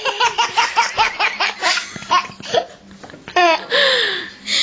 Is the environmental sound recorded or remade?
recorded